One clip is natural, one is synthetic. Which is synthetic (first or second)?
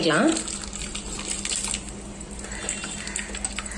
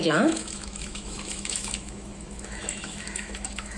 second